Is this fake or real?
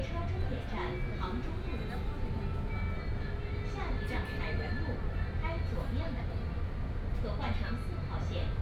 real